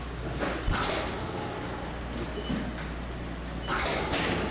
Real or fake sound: real